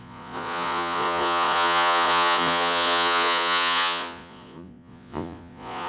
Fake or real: fake